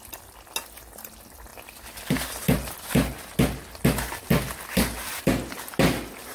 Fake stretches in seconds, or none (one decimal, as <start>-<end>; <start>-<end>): none